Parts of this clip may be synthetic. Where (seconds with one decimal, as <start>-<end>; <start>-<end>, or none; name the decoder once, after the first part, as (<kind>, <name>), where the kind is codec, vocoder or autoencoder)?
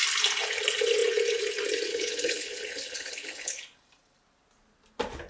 1.9-3.6 (codec, HILCodec)